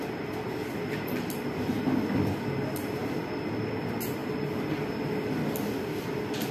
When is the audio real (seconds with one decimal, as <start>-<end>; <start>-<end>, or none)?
0.0-6.5